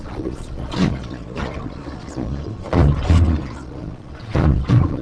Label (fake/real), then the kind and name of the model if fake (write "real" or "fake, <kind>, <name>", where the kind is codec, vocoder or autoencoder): fake, vocoder, Vocos